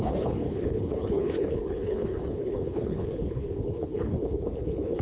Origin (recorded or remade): remade